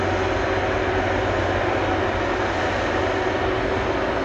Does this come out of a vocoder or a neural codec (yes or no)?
no